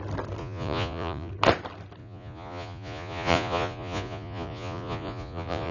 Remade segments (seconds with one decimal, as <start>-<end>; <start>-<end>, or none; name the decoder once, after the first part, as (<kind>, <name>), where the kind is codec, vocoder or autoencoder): 0.4-1.3 (vocoder, Vocos); 2.0-5.7